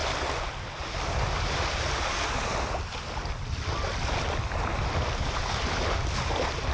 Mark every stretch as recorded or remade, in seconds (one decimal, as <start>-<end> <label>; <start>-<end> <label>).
0.0-0.6 recorded; 0.6-4.7 remade; 4.7-5.3 recorded; 5.3-6.7 remade